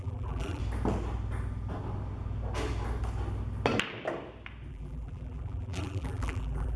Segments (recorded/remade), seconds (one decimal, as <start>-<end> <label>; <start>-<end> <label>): 0.0-0.6 remade; 0.6-4.7 recorded; 4.7-6.8 remade